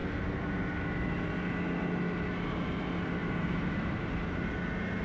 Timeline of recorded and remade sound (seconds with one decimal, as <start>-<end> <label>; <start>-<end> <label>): 0.0-3.2 recorded; 3.2-4.2 remade; 4.2-5.0 recorded